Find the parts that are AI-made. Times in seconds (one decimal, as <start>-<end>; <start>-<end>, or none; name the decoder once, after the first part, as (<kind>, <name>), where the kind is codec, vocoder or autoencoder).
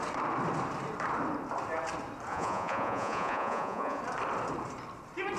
2.3-4.0 (vocoder, Vocos)